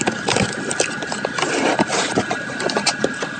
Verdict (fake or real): real